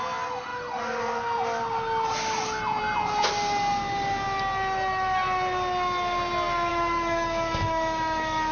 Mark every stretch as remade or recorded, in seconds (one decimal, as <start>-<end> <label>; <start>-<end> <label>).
0.0-6.7 recorded; 6.7-8.5 remade